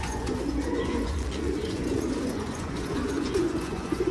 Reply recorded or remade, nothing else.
remade